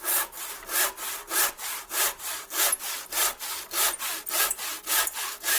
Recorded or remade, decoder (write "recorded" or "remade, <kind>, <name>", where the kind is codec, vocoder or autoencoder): recorded